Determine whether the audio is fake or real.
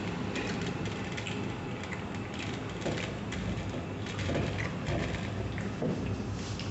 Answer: real